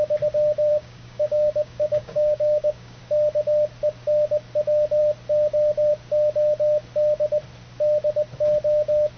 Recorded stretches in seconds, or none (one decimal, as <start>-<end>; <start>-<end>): 0.0-0.7; 3.0-9.2